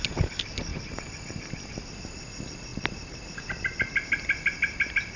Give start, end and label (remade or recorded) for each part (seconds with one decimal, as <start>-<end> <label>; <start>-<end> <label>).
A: 0.0-5.2 recorded